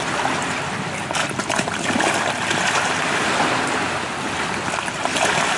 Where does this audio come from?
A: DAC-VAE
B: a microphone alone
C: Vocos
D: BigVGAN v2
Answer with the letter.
B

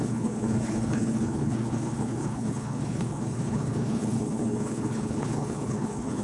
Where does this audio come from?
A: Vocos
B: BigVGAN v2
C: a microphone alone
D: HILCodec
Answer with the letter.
D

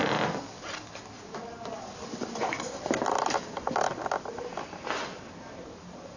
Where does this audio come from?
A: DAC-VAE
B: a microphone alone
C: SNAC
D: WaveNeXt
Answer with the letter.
B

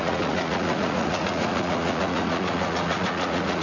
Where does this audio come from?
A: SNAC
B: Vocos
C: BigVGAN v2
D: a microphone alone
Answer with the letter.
B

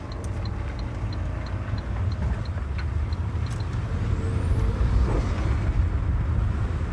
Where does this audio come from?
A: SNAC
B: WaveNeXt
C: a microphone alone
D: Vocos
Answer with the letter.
C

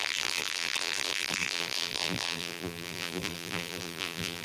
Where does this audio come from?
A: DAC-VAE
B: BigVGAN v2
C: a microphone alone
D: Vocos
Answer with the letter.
B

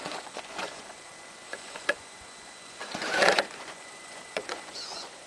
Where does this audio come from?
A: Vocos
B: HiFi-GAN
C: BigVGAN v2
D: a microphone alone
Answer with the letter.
A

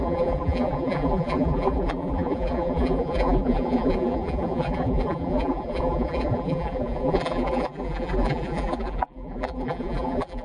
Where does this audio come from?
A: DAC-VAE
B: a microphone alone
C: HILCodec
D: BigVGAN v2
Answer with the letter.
D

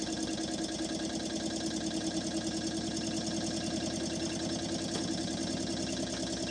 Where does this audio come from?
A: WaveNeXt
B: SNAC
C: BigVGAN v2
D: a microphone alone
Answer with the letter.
D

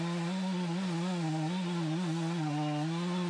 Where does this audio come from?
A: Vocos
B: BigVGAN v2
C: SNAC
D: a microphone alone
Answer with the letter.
D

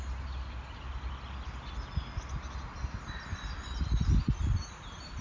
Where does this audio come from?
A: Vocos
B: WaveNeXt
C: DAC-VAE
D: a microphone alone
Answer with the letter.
D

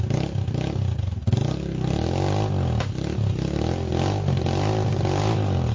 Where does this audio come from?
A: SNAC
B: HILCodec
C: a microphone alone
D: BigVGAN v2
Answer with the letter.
C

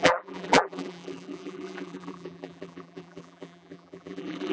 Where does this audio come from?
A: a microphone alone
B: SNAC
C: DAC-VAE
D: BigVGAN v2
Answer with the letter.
D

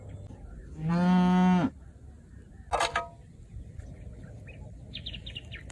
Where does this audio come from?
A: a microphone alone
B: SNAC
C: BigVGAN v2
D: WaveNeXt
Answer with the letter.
A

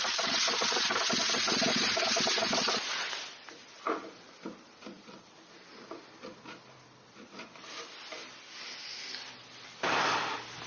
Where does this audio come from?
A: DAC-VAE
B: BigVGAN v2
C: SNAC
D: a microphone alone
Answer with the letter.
B